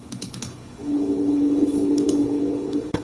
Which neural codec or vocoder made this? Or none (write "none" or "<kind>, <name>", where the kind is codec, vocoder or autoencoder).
codec, HILCodec